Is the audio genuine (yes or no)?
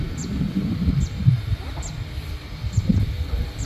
yes